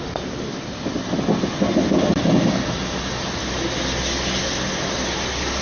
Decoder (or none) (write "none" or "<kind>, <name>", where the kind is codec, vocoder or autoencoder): none